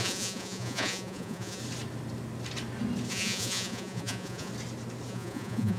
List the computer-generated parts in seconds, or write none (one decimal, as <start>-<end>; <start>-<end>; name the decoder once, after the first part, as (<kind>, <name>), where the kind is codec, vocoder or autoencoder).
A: 0.0-1.6 (vocoder, Vocos); 3.1-4.5; 5.1-5.8